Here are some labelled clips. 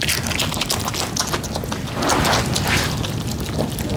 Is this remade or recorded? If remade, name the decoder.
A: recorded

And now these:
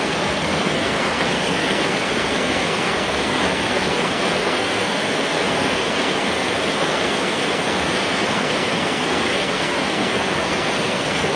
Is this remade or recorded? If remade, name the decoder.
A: remade, codec, SNAC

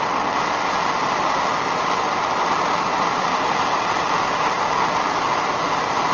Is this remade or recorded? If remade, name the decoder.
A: recorded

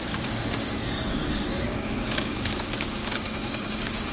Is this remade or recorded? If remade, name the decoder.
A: remade, codec, DAC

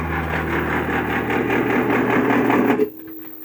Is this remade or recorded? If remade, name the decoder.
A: recorded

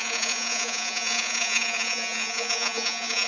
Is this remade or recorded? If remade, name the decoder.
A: remade, vocoder, Vocos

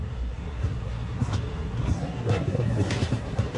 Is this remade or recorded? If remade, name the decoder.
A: remade, codec, SNAC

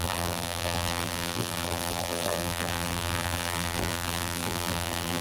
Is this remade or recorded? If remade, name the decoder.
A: remade, vocoder, BigVGAN v2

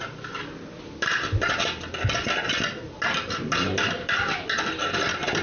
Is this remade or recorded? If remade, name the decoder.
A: recorded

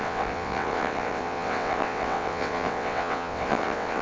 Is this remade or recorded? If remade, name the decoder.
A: remade, vocoder, WaveNeXt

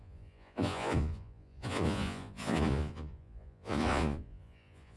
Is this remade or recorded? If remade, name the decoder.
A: remade, vocoder, Vocos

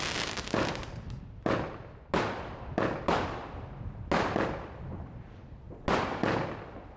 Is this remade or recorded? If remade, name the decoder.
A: recorded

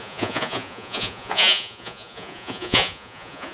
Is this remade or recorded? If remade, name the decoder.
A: remade, vocoder, Vocos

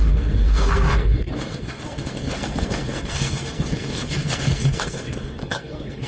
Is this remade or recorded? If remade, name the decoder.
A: remade, codec, SNAC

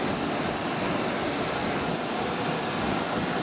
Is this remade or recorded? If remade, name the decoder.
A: recorded